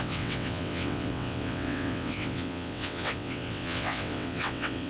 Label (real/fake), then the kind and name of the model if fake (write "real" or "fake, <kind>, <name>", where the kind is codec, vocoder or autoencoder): fake, vocoder, WaveNeXt